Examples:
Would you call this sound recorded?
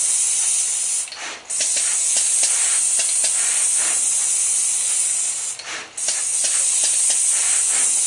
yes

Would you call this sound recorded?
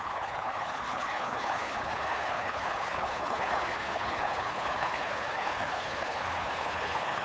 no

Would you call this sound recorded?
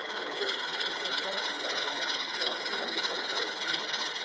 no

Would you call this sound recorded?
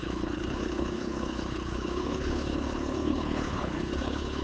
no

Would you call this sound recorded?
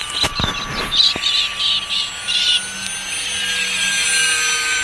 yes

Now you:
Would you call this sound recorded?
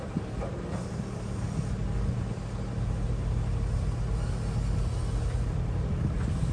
yes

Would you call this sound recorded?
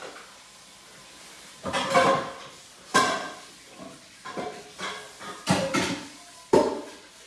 yes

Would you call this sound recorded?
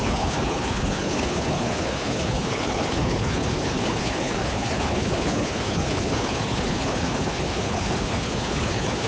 no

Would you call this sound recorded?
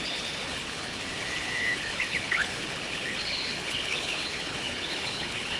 no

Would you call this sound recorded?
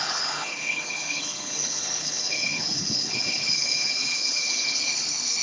no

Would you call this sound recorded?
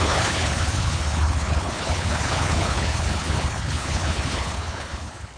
no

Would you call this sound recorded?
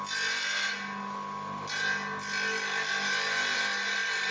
yes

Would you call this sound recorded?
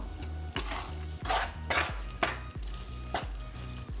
yes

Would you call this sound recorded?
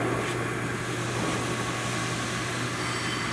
yes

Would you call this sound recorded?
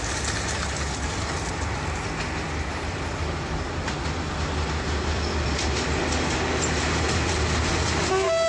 yes